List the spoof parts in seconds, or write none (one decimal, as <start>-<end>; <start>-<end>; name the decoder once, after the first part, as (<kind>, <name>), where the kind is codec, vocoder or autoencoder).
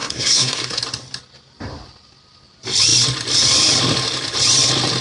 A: 0.0-0.8 (codec, SNAC)